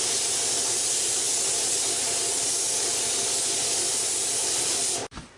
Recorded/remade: recorded